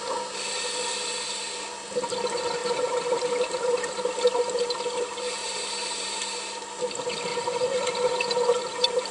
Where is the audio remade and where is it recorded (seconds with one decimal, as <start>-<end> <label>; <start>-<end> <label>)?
0.0-2.6 recorded; 2.6-4.1 remade; 4.1-5.4 recorded; 5.4-6.4 remade; 6.4-7.3 recorded; 7.3-9.1 remade